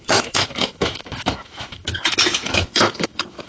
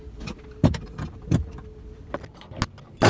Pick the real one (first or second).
second